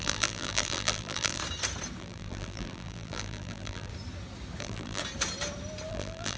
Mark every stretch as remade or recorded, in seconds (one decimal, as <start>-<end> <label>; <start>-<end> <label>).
0.0-1.4 remade; 1.4-2.0 recorded; 2.0-3.9 remade; 3.9-4.6 recorded; 4.6-5.0 remade; 5.0-5.9 recorded; 5.9-6.4 remade